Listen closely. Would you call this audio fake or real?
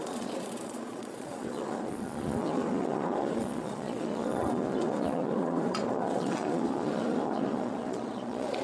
fake